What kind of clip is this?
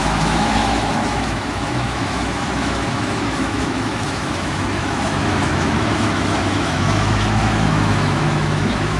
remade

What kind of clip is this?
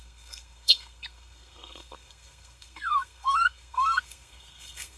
remade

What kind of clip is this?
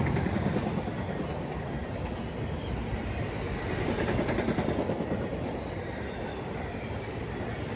remade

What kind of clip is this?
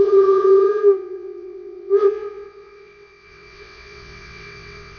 remade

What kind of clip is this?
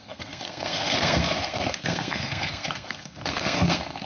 remade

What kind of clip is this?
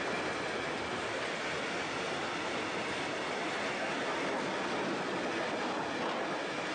recorded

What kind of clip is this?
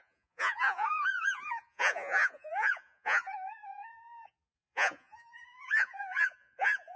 remade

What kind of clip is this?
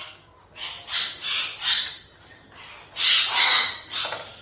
recorded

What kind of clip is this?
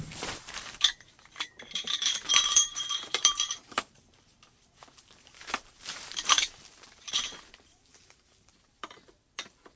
remade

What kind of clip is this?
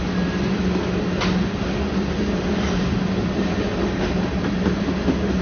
recorded